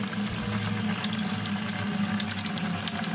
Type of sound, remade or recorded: recorded